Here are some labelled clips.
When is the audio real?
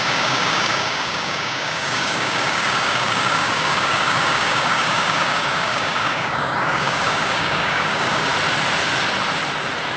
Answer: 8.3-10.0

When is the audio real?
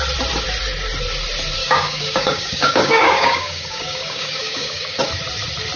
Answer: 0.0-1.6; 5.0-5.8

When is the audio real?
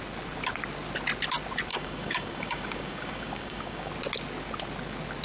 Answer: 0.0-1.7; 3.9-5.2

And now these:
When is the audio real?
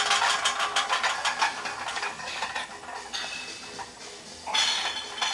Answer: 0.0-1.9; 2.4-5.3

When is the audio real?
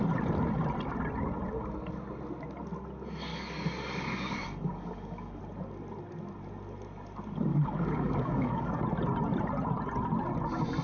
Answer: 0.0-3.3; 5.4-7.5; 8.8-10.8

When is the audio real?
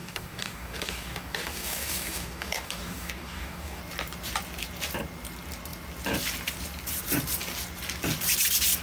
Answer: 3.8-8.8